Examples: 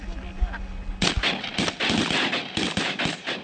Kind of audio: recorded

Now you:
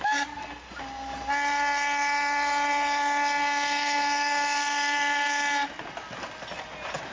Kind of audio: recorded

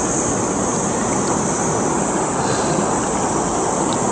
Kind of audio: recorded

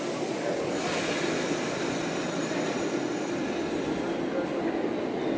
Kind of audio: recorded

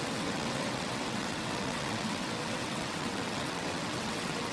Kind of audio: remade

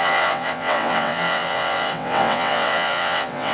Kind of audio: remade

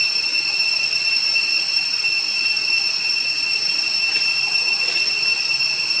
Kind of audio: recorded